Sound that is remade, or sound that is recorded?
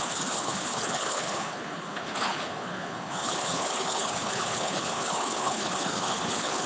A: remade